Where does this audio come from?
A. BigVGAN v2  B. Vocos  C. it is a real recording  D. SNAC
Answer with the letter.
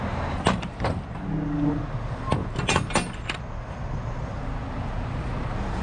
C